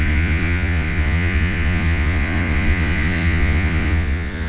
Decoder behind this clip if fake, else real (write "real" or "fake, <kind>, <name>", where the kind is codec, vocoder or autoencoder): fake, vocoder, Vocos